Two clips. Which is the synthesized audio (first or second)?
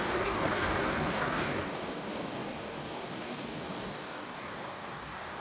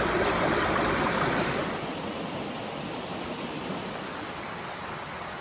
first